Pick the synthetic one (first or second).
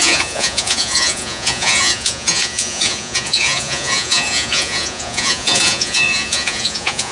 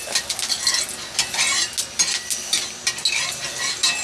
first